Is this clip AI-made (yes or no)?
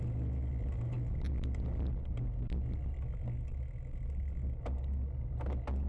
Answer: no